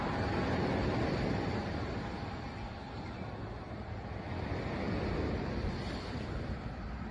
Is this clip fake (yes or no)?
no